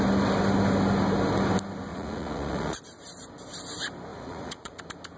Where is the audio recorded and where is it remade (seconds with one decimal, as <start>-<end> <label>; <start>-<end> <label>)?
0.0-1.9 recorded; 1.9-2.8 remade; 2.8-4.1 recorded; 4.1-4.8 remade; 4.8-5.2 recorded